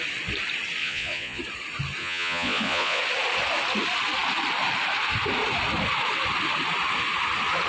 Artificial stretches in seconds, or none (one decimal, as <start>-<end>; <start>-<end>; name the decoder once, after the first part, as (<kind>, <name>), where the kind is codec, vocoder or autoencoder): 0.8-1.4 (vocoder, Vocos); 2.0-3.0